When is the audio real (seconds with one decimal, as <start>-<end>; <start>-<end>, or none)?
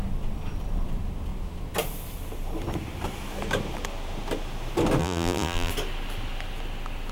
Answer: 0.0-5.0; 5.7-7.1